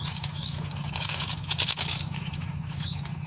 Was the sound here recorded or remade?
remade